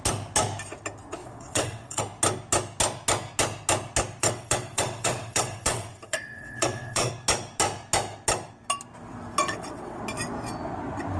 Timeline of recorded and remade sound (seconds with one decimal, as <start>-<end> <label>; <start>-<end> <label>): 0.0-1.2 recorded; 1.2-2.0 remade; 2.0-4.2 recorded; 4.2-7.1 remade; 7.1-9.4 recorded; 9.4-10.0 remade; 10.0-11.2 recorded